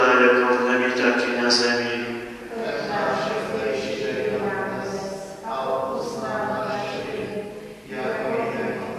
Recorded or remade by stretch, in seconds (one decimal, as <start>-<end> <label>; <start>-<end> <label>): 0.0-6.6 recorded; 6.6-7.5 remade; 7.5-9.0 recorded